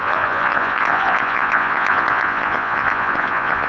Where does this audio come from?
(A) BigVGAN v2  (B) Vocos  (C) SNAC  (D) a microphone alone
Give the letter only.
B